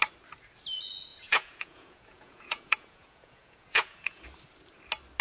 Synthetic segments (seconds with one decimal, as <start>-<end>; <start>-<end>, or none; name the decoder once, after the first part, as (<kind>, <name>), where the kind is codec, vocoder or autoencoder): 1.1-4.2 (vocoder, Vocos)